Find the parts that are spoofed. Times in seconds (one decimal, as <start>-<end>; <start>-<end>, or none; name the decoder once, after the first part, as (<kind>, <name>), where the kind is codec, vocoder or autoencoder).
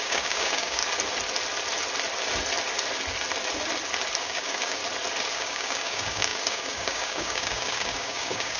0.0-0.8 (codec, DAC); 4.2-4.8; 5.3-8.6